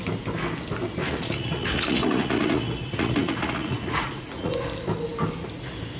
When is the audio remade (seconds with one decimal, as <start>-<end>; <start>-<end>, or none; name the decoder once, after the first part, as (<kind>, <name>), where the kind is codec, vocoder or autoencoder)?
1.0-4.5 (vocoder, Vocos)

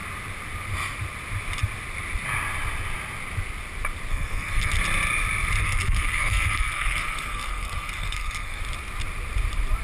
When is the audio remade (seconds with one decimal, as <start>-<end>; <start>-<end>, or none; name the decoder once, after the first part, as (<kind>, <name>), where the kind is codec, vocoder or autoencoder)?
4.1-4.8 (codec, SNAC); 5.6-8.6

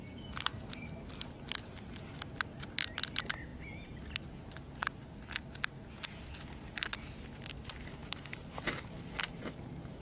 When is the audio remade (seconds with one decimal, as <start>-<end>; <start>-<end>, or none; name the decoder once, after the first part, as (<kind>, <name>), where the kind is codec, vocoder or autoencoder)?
none

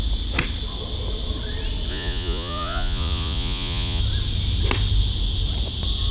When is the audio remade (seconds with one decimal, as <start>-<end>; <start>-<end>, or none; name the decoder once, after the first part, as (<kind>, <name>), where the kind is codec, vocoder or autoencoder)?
1.9-4.0 (vocoder, Vocos)

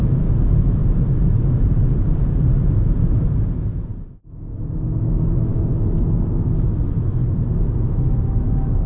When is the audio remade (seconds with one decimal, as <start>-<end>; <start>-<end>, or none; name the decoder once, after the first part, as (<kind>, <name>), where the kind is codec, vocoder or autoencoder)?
0.0-0.8 (autoencoder, DAC-VAE); 4.3-7.2; 7.9-8.9